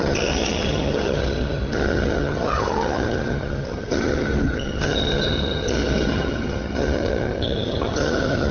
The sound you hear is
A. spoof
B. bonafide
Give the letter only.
A